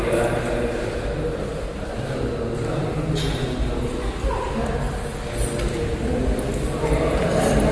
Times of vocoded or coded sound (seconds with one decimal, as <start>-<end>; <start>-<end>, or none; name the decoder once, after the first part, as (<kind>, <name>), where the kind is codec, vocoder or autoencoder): none